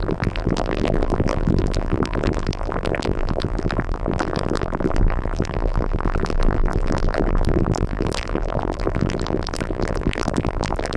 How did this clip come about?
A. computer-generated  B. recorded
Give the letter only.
A